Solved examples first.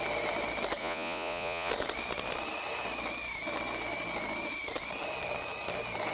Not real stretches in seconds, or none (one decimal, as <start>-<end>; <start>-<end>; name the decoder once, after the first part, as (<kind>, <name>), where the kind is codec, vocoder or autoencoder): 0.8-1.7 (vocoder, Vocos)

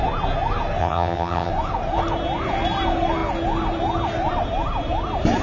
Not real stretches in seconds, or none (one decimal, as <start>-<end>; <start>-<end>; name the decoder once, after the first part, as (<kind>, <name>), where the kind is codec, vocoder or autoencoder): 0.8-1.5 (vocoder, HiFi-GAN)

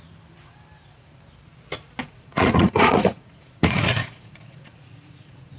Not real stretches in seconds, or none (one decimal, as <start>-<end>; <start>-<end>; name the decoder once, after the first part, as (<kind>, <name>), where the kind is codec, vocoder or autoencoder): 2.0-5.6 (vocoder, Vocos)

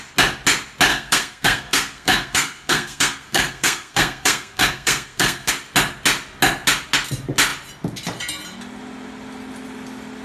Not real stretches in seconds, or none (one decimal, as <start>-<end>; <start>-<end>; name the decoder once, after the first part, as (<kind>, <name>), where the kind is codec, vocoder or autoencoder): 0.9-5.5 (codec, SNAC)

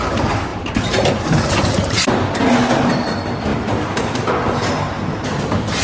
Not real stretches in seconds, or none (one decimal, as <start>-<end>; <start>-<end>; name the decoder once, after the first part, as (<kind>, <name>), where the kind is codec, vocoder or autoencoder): 0.5-1.4 (vocoder, BigVGAN v2)